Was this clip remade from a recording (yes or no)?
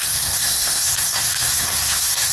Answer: yes